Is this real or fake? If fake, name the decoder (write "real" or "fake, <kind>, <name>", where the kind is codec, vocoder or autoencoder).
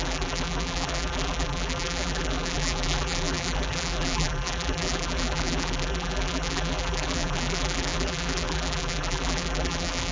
fake, vocoder, BigVGAN v2